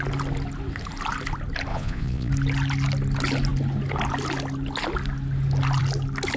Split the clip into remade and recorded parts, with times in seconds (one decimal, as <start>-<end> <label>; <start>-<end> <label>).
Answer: 0.0-1.7 recorded; 1.7-2.3 remade; 2.3-6.4 recorded